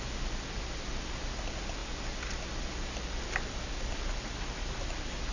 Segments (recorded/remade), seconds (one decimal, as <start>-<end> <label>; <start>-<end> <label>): 0.0-5.3 recorded